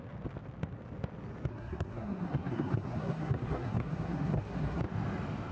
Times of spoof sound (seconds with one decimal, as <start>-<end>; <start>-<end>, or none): 1.5-4.8